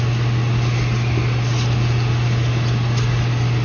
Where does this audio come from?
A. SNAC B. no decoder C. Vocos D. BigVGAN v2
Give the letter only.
B